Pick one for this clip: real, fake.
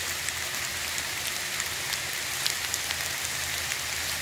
real